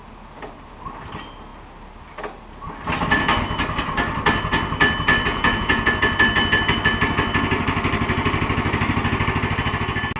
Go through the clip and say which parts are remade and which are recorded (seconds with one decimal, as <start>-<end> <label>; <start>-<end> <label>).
0.0-5.3 recorded; 5.3-5.9 remade; 5.9-10.2 recorded